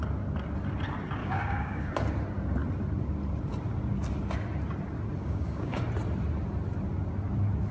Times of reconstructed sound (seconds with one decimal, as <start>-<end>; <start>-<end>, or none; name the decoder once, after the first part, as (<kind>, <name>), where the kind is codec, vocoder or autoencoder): 1.2-1.9 (codec, DAC); 5.2-5.8

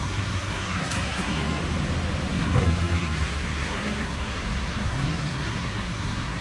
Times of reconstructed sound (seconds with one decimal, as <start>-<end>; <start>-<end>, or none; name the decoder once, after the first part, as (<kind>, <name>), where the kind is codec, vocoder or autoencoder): 0.0-1.6 (codec, SNAC); 2.3-6.4

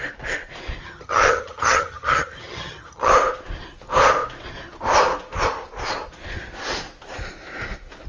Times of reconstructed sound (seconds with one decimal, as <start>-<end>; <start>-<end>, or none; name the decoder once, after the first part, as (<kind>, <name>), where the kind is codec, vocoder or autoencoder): 0.8-3.1 (vocoder, HiFi-GAN)